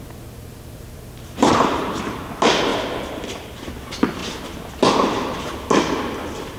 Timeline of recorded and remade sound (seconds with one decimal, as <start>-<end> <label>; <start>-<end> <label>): 0.0-1.4 recorded; 1.4-2.0 remade; 2.0-6.6 recorded